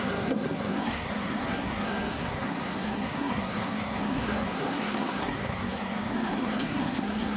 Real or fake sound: fake